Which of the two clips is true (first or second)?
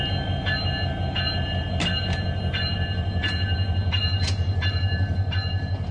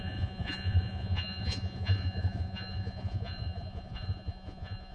first